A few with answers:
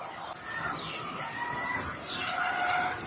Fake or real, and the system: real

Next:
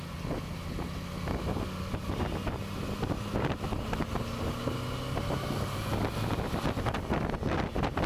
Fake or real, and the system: real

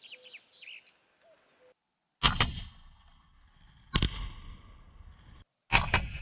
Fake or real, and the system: real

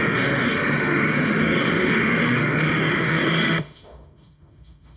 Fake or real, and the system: fake, autoencoder, DAC-VAE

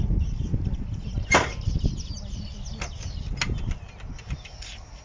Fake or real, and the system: real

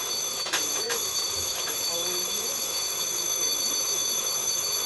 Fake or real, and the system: fake, autoencoder, DAC-VAE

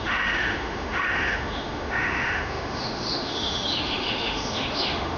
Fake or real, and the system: fake, autoencoder, DAC-VAE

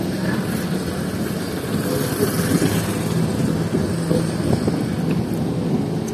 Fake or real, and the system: real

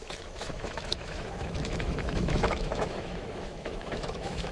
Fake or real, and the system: fake, autoencoder, DAC-VAE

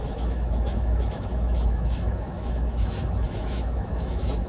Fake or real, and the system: fake, autoencoder, DAC-VAE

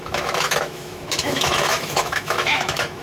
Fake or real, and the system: fake, autoencoder, DAC-VAE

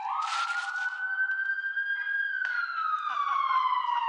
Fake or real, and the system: real